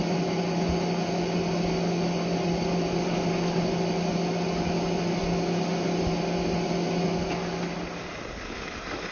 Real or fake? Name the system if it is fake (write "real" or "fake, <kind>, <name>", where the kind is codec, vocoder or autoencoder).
real